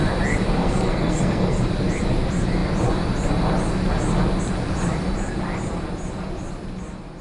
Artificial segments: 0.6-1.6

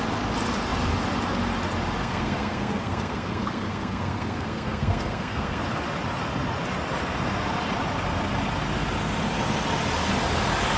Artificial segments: 2.0-5.6

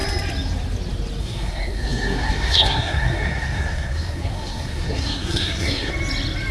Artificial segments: 1.2-5.9

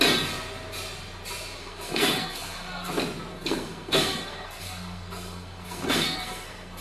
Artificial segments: 1.6-2.9; 3.3-6.8